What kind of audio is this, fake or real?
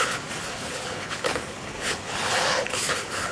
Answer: fake